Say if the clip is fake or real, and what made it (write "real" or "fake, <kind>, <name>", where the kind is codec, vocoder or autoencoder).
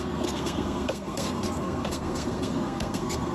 fake, codec, SNAC